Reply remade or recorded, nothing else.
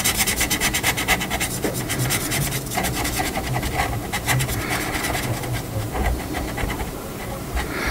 remade